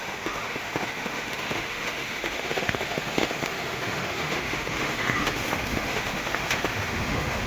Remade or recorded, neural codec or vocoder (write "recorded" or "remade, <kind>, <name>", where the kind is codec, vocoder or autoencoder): remade, autoencoder, DAC-VAE